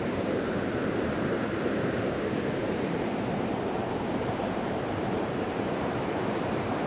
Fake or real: fake